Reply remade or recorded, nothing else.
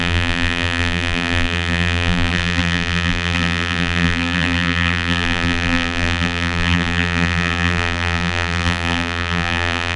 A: remade